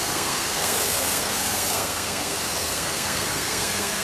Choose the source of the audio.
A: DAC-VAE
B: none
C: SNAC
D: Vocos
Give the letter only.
C